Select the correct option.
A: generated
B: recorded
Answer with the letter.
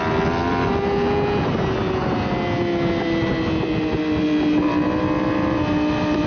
B